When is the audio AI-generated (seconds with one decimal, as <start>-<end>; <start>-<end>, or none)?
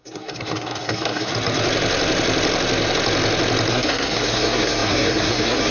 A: 0.0-1.3; 3.7-5.7